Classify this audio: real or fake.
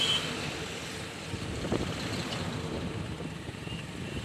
fake